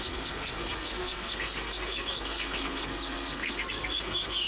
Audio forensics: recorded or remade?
remade